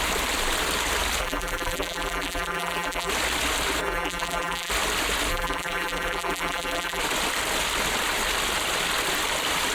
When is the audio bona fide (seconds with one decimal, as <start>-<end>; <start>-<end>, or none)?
0.0-1.2; 3.1-3.8; 4.7-5.3; 7.0-9.7